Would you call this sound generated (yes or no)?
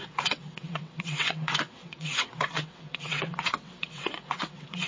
yes